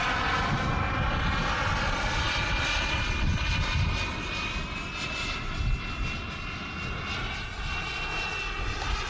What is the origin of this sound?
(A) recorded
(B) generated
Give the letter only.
A